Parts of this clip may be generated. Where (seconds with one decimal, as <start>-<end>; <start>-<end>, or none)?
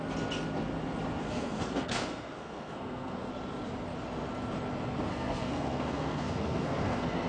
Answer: 1.2-3.3; 5.1-7.3